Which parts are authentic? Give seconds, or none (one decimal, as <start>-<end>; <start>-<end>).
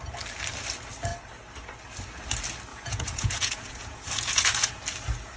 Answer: 0.0-2.7; 4.7-5.4